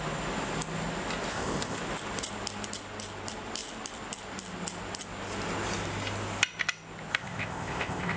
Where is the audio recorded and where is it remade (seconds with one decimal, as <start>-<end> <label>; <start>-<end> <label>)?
0.0-1.3 recorded; 1.3-1.8 remade; 1.8-7.1 recorded; 7.1-8.2 remade